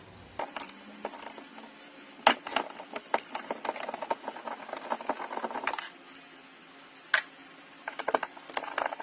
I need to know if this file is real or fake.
real